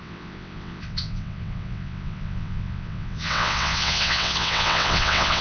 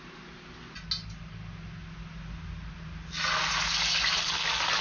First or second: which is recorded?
second